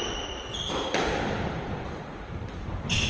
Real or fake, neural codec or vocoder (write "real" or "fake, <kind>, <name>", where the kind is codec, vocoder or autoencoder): real